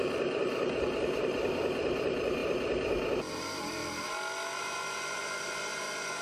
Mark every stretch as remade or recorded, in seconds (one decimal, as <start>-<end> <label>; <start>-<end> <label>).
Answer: 0.0-2.4 remade; 2.4-3.3 recorded; 3.3-3.8 remade; 3.8-4.6 recorded; 4.6-6.2 remade